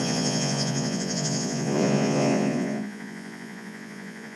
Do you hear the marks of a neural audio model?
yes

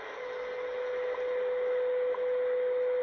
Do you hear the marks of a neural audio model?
no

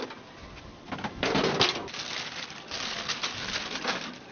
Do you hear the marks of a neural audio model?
no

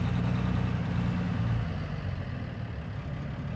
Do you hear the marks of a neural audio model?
no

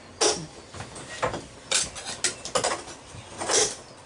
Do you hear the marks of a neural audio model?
no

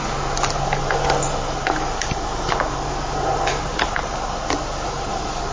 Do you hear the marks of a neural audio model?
no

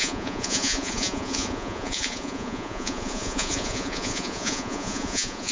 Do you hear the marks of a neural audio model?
yes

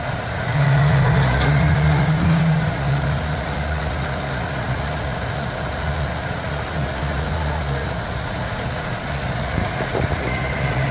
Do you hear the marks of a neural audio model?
yes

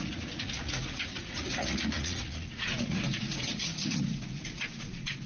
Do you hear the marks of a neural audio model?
yes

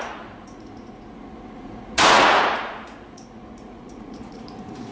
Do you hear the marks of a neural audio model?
yes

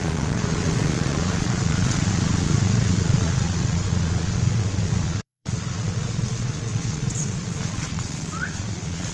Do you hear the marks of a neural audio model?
yes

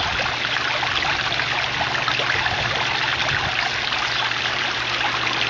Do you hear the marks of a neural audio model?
no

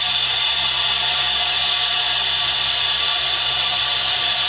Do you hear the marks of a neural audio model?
no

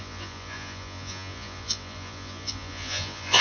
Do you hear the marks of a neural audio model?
yes